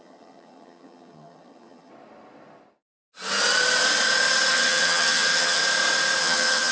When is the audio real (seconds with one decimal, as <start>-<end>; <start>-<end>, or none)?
1.9-4.5; 5.6-6.2